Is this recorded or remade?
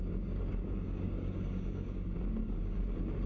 remade